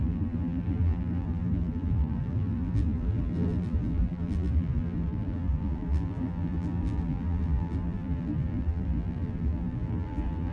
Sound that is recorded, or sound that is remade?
remade